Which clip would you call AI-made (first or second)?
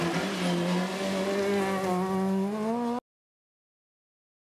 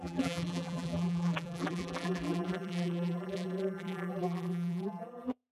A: second